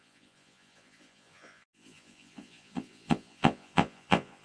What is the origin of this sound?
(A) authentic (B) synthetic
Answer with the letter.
B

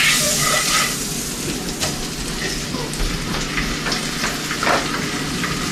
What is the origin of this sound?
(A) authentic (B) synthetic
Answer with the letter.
A